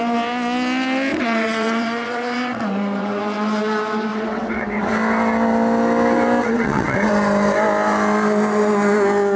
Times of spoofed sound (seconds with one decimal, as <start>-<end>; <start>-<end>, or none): 1.1-3.2; 4.1-4.9; 6.4-7.1